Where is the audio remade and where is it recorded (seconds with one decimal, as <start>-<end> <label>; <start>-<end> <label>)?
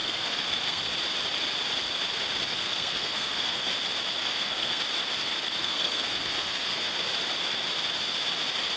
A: 0.0-0.8 remade; 0.8-2.5 recorded; 2.5-3.7 remade; 3.7-4.2 recorded; 4.2-4.8 remade; 4.8-5.6 recorded; 5.6-7.1 remade; 7.1-8.8 recorded